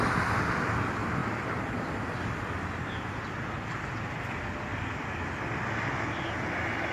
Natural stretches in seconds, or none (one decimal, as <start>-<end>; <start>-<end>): 0.0-6.9